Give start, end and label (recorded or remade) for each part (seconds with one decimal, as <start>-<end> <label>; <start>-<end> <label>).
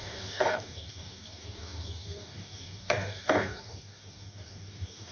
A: 0.0-5.1 remade